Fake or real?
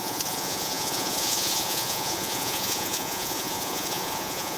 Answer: fake